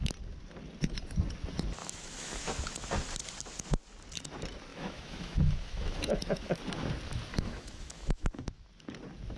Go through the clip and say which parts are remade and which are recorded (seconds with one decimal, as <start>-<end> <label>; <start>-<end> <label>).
0.0-1.8 recorded; 1.8-2.4 remade; 2.4-4.7 recorded; 4.7-6.6 remade; 6.6-7.3 recorded; 7.3-8.6 remade; 8.6-9.4 recorded